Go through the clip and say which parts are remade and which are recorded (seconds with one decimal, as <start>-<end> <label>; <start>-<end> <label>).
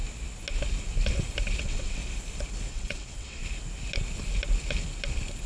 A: 0.0-1.6 recorded; 1.6-2.0 remade; 2.0-2.7 recorded; 2.7-3.4 remade; 3.4-5.5 recorded